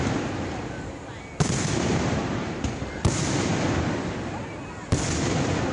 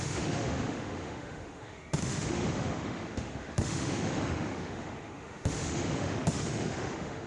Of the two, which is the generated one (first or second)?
second